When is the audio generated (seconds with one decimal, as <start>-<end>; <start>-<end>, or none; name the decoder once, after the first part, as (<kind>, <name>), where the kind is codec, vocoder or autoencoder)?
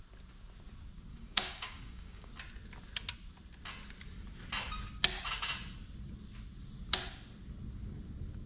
1.1-2.3 (codec, DAC)